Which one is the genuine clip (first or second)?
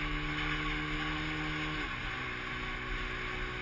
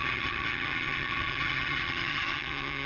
first